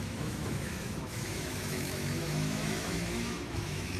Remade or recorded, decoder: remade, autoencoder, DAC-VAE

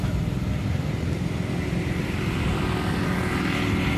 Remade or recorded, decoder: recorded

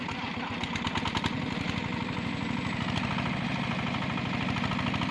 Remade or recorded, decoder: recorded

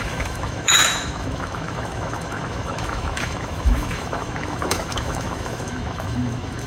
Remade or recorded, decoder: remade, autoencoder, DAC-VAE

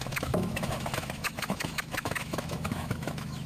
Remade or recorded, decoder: remade, autoencoder, DAC-VAE